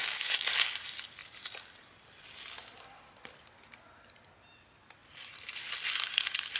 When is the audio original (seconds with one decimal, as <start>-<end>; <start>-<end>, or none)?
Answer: 0.5-6.6